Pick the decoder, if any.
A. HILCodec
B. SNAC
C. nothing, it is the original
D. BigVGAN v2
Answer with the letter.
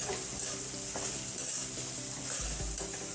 C